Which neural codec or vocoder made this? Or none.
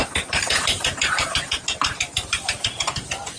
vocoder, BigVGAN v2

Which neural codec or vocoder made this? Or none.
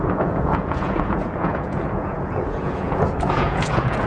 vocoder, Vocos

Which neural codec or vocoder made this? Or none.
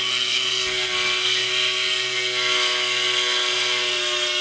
codec, SNAC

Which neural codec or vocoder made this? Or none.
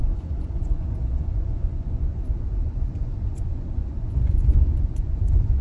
vocoder, Vocos